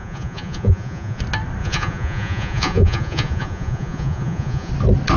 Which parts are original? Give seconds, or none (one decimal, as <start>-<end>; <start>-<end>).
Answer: 1.2-1.6; 4.7-5.2